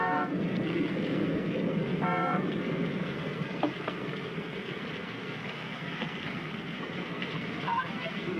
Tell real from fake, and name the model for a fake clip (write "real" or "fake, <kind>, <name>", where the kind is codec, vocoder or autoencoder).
fake, codec, SNAC